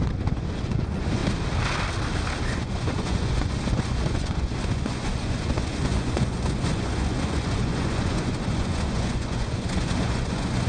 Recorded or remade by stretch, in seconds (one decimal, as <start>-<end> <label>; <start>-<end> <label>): 0.0-1.2 remade; 1.2-2.4 recorded; 2.4-10.7 remade